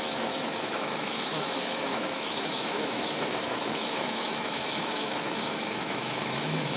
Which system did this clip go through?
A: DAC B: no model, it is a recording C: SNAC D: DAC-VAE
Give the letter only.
D